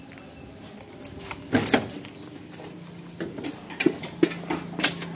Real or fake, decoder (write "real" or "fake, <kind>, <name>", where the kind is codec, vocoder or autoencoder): real